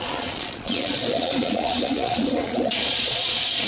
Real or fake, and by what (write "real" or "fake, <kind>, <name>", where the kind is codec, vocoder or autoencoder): fake, vocoder, Vocos